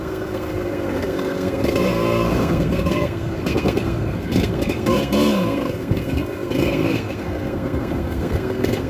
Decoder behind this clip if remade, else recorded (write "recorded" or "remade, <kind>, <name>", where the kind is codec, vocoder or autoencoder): remade, codec, SNAC